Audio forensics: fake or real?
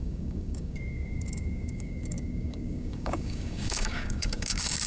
fake